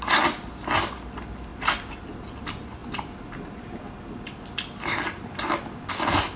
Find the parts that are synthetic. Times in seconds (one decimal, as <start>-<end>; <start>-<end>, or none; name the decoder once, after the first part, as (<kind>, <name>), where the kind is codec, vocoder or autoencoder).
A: none